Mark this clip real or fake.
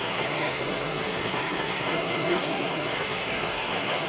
fake